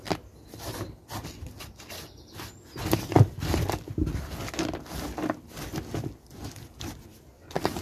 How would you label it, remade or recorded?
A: recorded